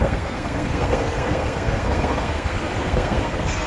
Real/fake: fake